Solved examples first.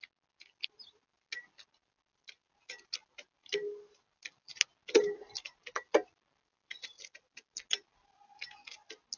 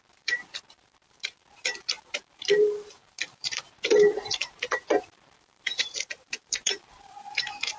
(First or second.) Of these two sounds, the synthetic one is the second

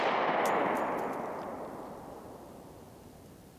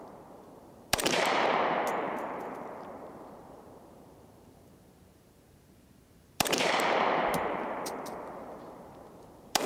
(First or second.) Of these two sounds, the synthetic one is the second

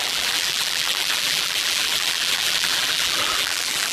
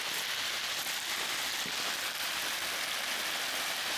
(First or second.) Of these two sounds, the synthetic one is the first